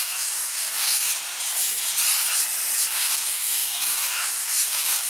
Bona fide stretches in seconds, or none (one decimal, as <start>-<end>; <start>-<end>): 1.1-2.9